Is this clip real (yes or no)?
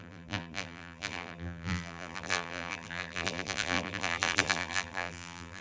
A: no